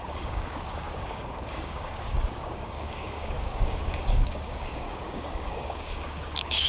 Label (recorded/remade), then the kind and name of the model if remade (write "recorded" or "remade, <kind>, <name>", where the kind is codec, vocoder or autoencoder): remade, codec, DAC